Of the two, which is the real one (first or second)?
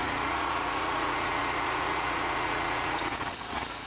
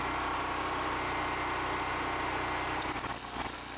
second